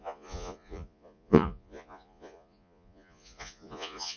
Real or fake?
fake